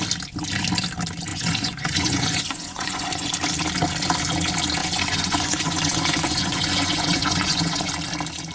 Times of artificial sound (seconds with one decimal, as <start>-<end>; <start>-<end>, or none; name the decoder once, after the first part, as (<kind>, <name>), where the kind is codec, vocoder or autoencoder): 1.3-3.3 (vocoder, Vocos); 4.8-7.9